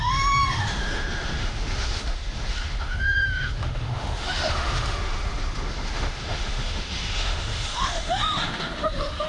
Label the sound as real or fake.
fake